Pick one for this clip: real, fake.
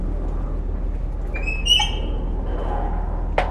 real